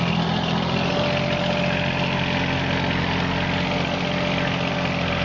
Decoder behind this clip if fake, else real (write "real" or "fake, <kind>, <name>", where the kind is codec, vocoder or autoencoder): real